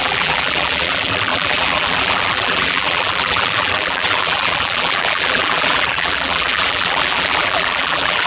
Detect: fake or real fake